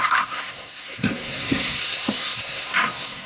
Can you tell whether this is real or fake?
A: fake